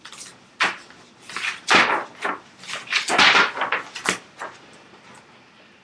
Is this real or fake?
real